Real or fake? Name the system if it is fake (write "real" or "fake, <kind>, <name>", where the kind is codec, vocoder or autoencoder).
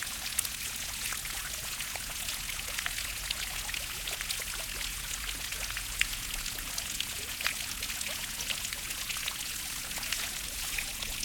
fake, vocoder, Vocos